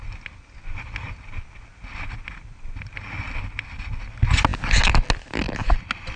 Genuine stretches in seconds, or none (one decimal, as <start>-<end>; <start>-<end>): 0.0-6.2